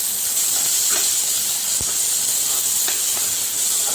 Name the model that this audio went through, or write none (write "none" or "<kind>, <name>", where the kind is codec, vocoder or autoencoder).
none